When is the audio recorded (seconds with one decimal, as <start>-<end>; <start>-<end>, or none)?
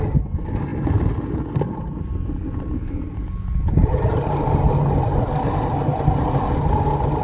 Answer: 0.0-7.2